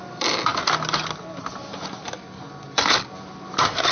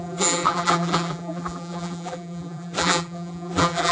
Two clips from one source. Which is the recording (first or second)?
first